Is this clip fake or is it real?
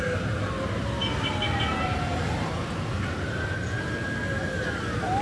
real